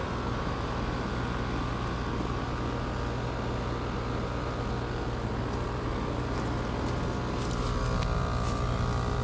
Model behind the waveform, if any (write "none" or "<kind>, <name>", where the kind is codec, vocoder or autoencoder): none